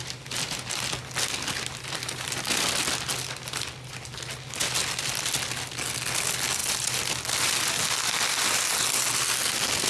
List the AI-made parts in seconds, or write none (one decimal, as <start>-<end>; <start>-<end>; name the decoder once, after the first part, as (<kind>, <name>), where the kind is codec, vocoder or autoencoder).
none